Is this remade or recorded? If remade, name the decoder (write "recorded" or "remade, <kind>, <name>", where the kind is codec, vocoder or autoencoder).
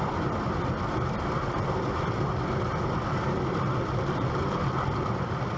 recorded